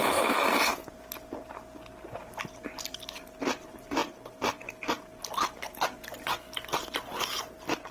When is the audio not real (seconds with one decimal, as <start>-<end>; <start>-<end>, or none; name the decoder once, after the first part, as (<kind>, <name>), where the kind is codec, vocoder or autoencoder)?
none